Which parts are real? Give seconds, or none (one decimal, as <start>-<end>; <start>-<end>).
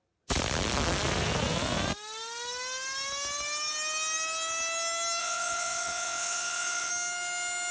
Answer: 0.0-5.2; 6.9-7.7